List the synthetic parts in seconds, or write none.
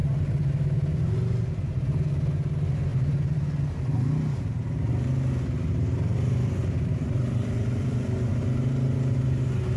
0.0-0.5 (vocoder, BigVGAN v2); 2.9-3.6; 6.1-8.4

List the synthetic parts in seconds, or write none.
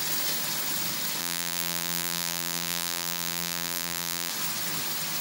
1.2-4.3 (vocoder, BigVGAN v2)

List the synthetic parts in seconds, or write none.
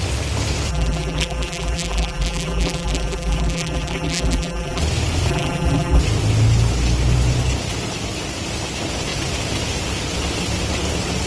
0.7-4.8 (vocoder, BigVGAN v2); 5.3-6.0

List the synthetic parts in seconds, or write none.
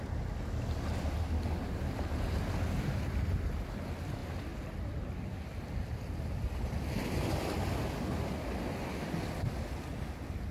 none